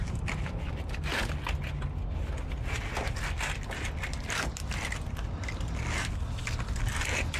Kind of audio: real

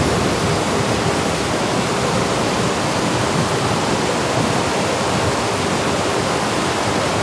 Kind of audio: real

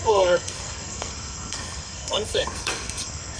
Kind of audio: fake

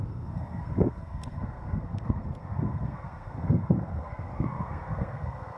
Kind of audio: fake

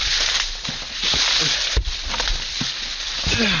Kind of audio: real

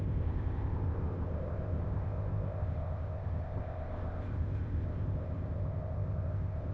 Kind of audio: fake